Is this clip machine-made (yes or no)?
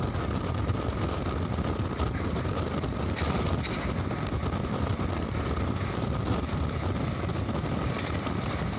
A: no